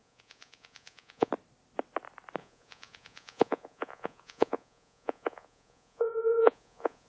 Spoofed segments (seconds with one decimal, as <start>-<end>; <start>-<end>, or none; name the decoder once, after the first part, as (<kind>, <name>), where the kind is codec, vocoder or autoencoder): 0.0-1.3 (vocoder, Vocos); 2.4-7.1